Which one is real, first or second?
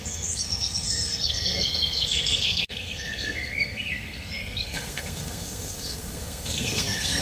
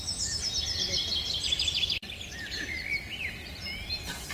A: second